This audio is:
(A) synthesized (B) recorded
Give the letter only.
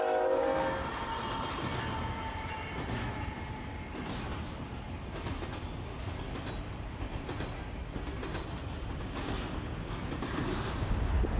B